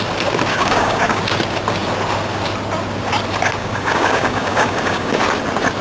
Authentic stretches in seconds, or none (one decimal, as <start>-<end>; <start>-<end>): 0.0-0.5; 1.2-3.6; 5.2-5.8